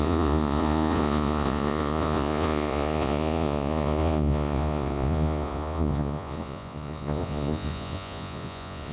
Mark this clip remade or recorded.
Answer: remade